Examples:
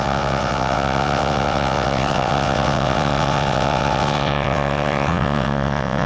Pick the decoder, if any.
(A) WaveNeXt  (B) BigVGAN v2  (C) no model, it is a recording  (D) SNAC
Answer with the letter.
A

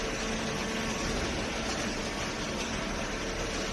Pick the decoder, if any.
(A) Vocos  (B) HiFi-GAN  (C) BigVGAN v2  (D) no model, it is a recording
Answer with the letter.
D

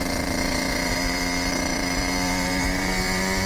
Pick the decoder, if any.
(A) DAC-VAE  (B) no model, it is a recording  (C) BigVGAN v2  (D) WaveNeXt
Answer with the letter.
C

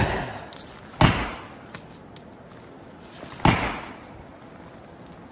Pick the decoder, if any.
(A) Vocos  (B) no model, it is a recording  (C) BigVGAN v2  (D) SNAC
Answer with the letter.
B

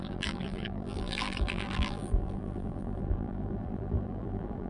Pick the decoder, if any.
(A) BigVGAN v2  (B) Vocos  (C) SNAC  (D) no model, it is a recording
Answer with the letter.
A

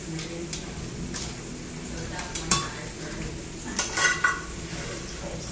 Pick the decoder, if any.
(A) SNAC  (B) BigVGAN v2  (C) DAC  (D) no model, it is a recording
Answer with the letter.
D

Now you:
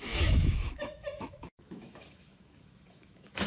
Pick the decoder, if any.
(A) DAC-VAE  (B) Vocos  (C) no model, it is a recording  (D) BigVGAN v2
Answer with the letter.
A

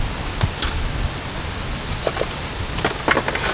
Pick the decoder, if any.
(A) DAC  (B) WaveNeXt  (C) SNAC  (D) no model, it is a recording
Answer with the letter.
D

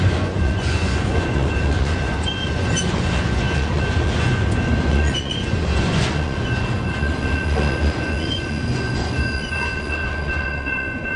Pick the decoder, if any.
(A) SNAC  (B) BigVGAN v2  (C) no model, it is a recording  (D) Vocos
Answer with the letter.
D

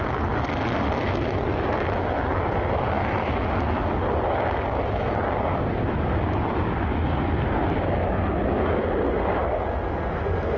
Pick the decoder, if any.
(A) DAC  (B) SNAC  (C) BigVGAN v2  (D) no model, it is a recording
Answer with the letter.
D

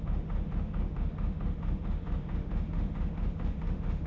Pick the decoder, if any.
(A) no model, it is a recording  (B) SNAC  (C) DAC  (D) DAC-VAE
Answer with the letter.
D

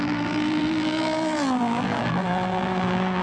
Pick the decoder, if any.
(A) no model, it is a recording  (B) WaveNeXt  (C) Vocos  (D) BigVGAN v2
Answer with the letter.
D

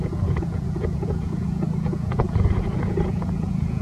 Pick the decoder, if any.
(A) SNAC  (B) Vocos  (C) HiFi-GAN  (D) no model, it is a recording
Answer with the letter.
B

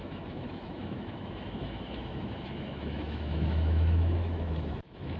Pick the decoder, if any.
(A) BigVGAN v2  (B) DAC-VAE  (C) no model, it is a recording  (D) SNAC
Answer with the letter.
B